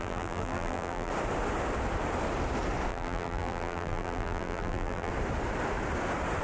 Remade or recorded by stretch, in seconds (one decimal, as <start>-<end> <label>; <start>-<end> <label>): 0.0-1.1 remade; 1.1-2.9 recorded; 2.9-5.1 remade; 5.1-6.4 recorded